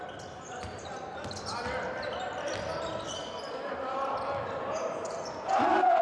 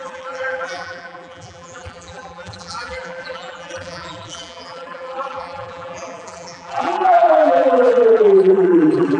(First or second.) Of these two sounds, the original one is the first